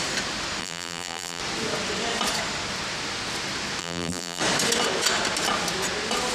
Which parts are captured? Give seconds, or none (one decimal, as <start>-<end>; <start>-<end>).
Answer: 0.0-0.6; 1.4-3.8; 4.4-6.3